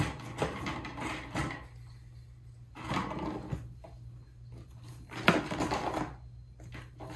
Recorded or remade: recorded